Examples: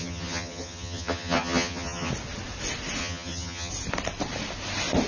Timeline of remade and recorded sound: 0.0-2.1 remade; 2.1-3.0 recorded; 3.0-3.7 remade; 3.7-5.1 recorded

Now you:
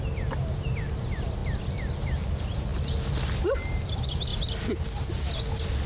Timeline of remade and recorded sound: 0.0-5.9 recorded